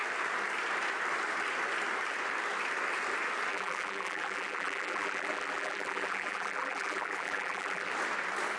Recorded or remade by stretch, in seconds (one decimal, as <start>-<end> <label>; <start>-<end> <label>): 0.0-3.5 recorded; 3.5-7.9 remade; 7.9-8.6 recorded